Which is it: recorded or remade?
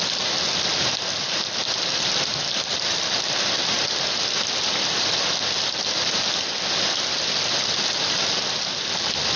recorded